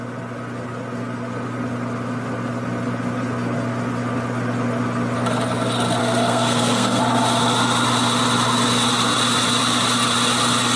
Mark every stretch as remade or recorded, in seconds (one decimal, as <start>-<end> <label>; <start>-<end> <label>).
0.0-6.0 recorded; 6.0-7.0 remade; 7.0-10.8 recorded